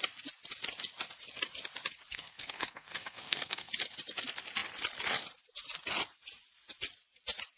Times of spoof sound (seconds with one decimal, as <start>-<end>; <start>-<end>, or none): 2.1-3.7